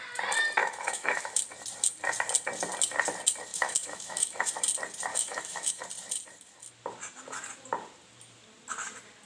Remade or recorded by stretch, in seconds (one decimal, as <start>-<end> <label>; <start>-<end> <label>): 0.0-0.6 recorded; 0.6-1.4 remade; 1.4-3.5 recorded; 3.5-4.5 remade; 4.5-5.1 recorded; 5.1-5.8 remade; 5.8-9.3 recorded